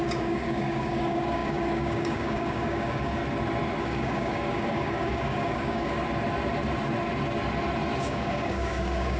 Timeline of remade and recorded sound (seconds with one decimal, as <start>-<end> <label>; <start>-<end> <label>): 0.0-3.2 remade; 3.2-3.8 recorded; 3.8-6.0 remade; 6.0-8.0 recorded; 8.0-9.2 remade